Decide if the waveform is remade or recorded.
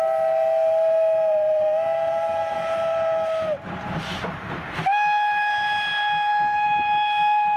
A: recorded